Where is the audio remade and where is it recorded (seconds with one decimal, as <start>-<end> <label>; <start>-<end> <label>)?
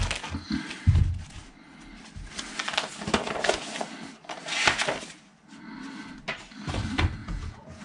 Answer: 0.0-7.2 recorded; 7.2-7.8 remade